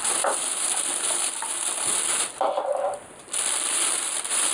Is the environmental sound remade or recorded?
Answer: remade